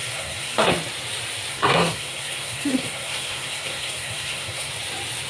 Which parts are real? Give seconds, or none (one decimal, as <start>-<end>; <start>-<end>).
0.7-1.5; 4.7-5.3